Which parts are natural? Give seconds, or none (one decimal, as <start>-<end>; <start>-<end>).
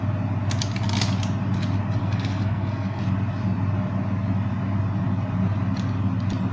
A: 0.0-2.0; 3.0-6.5